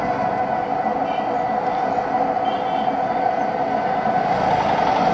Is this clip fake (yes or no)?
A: no